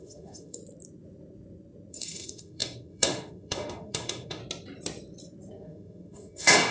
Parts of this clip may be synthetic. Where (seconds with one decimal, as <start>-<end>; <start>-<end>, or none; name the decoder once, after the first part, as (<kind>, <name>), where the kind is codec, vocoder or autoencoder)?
0.0-0.6 (autoencoder, DAC-VAE); 1.9-4.4; 5.5-6.7